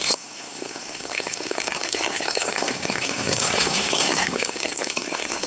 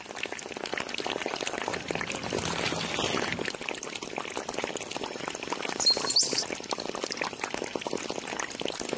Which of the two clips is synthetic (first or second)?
first